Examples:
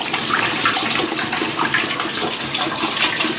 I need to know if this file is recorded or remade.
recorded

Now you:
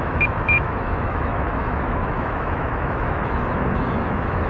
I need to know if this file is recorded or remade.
remade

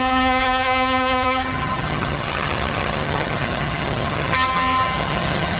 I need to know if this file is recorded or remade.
remade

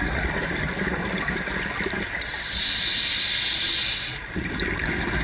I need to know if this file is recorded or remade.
recorded